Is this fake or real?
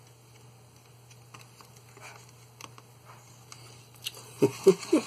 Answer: real